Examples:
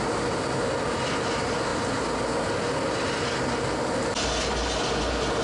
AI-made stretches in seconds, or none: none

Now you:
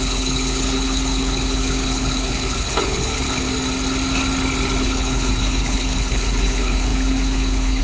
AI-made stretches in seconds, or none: 0.0-3.5 (codec, HILCodec); 4.8-7.8